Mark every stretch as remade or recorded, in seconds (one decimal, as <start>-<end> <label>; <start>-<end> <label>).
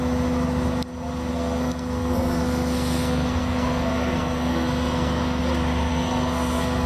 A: 0.0-1.3 recorded; 1.3-5.4 remade; 5.4-5.9 recorded; 5.9-6.9 remade